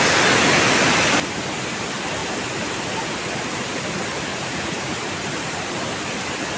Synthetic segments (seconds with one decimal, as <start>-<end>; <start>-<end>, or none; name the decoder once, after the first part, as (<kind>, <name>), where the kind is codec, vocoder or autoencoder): 4.3-4.9 (vocoder, Vocos)

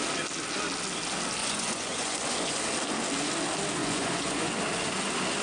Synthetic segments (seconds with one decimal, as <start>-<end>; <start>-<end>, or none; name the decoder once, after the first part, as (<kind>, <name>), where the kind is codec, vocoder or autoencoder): 1.4-2.6 (vocoder, Vocos); 3.8-4.5

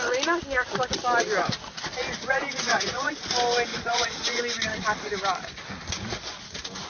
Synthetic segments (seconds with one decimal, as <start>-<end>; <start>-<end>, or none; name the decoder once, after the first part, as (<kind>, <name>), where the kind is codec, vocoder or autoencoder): 2.0-3.1 (vocoder, Vocos); 3.7-4.4